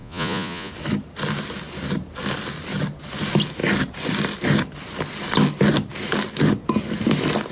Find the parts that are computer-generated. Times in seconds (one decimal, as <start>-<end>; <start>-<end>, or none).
0.0-0.7